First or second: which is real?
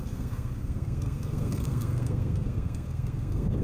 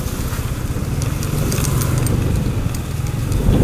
second